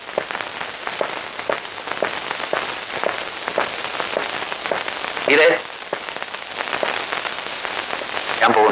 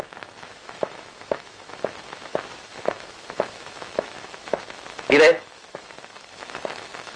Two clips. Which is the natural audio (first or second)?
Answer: first